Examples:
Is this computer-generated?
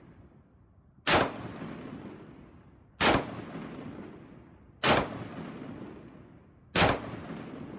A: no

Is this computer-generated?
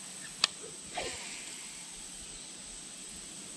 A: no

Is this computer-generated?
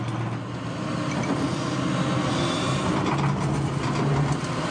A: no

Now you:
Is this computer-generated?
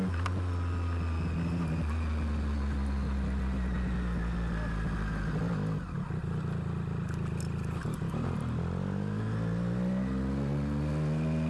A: no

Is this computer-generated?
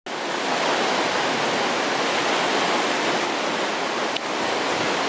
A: no